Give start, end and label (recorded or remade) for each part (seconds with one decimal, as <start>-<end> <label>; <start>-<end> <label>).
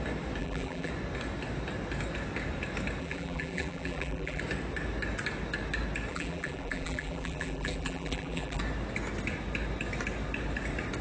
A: 0.0-0.4 recorded; 0.4-0.9 remade; 0.9-3.0 recorded; 3.0-4.4 remade; 4.4-6.1 recorded; 6.1-8.6 remade; 8.6-11.0 recorded